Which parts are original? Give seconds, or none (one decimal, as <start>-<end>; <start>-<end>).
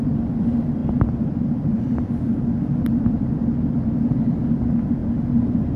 5.0-5.8